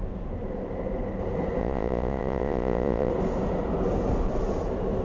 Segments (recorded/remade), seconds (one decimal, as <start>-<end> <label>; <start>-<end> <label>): 0.0-1.6 recorded; 1.6-3.1 remade; 3.1-5.0 recorded